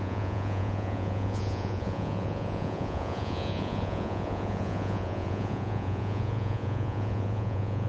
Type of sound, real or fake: fake